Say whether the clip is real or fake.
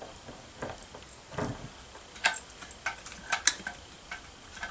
real